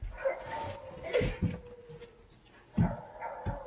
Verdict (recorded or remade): recorded